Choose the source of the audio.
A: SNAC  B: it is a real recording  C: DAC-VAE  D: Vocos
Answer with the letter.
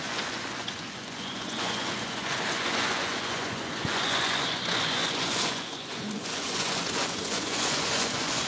D